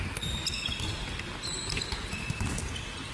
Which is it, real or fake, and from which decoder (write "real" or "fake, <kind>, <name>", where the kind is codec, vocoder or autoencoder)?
real